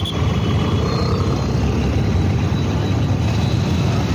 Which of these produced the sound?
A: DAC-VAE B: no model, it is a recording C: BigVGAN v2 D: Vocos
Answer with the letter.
B